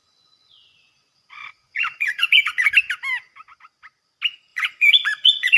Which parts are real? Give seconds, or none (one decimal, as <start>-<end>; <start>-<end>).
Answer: 2.7-4.5